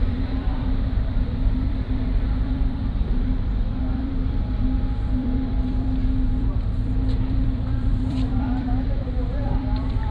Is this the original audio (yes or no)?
no